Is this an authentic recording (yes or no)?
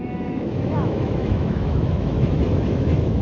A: no